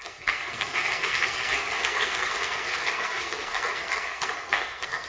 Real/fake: fake